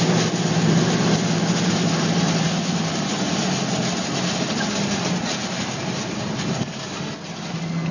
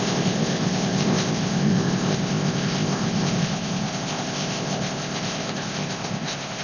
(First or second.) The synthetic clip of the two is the second